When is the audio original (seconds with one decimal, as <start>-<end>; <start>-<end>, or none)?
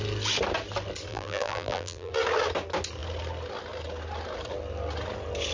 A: 0.0-1.1; 2.1-5.5